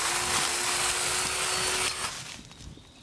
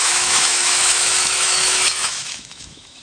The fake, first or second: second